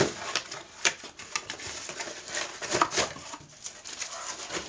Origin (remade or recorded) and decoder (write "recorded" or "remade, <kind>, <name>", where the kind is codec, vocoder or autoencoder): recorded